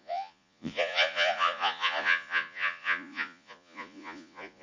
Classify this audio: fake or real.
fake